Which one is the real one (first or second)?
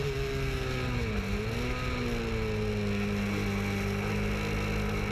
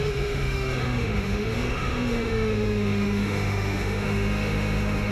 first